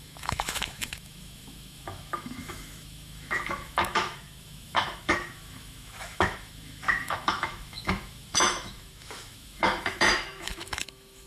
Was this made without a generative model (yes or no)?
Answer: no